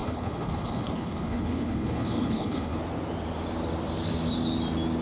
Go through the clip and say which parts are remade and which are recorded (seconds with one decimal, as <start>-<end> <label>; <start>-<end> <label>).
0.0-2.8 remade; 2.8-5.0 recorded